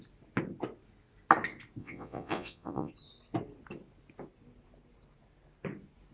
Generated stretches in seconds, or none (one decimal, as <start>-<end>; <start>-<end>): 1.8-2.9